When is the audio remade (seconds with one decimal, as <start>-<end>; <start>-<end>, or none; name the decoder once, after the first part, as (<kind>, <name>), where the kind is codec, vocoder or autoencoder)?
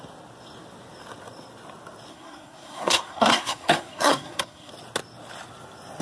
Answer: 2.1-4.7 (codec, SNAC)